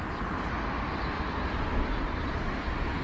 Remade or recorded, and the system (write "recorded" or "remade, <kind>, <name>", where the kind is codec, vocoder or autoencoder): recorded